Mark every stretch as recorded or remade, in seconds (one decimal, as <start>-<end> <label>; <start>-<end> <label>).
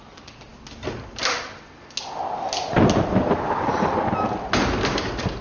0.0-5.4 recorded